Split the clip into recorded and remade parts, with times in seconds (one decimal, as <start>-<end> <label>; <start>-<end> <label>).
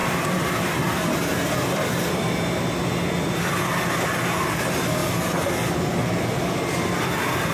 0.0-4.5 remade; 4.5-7.5 recorded